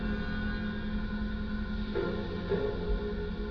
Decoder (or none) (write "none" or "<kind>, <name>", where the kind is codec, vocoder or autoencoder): none